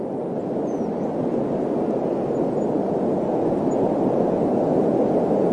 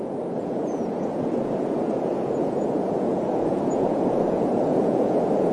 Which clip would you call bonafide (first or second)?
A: first